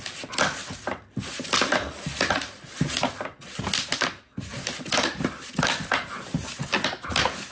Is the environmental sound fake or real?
real